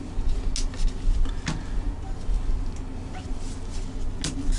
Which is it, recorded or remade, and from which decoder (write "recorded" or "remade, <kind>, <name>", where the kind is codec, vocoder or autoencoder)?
recorded